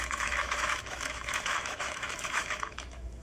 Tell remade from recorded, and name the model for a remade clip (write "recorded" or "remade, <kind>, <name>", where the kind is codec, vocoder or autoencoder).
remade, autoencoder, DAC-VAE